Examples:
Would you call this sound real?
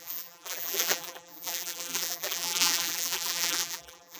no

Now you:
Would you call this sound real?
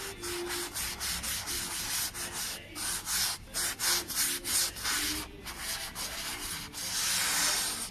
yes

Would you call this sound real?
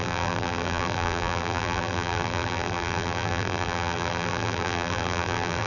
no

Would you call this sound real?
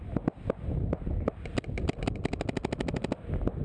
yes